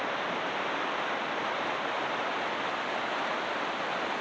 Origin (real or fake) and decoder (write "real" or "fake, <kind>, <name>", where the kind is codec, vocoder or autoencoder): real